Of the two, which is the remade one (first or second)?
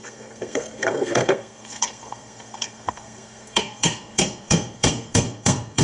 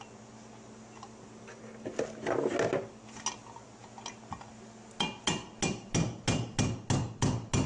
first